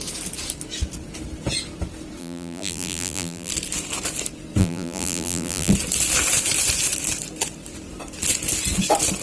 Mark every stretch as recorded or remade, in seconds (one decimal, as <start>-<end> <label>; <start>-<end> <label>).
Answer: 0.0-2.2 recorded; 2.2-3.5 remade; 3.5-4.6 recorded; 4.6-5.7 remade; 5.7-9.2 recorded